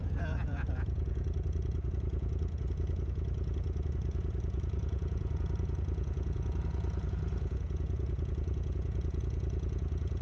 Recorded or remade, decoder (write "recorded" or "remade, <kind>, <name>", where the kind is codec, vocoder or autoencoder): remade, vocoder, Vocos